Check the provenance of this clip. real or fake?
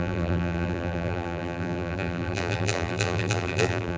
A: fake